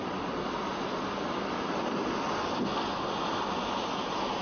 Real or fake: real